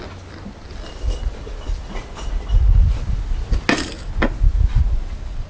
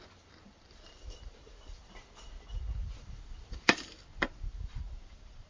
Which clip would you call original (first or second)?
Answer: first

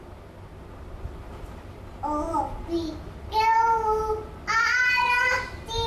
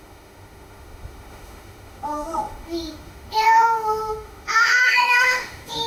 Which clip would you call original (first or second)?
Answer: first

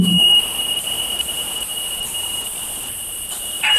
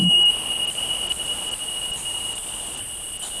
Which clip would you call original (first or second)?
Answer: second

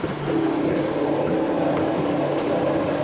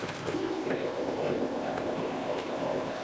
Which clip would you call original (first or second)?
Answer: first